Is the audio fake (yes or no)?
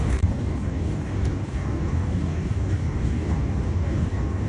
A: yes